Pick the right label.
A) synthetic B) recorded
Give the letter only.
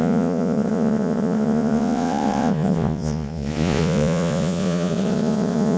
A